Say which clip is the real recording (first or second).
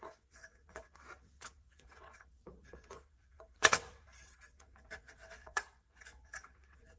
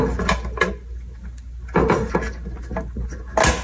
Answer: second